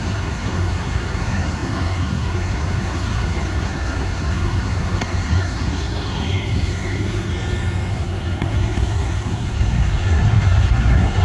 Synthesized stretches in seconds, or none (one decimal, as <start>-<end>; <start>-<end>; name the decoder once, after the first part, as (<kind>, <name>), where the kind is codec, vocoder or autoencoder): 0.0-7.3 (codec, SNAC); 7.9-11.2